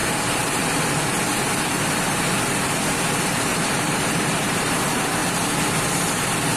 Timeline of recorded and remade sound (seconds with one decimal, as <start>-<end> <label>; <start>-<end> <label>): 0.0-1.4 remade; 1.4-3.5 recorded; 3.5-4.7 remade; 4.7-6.6 recorded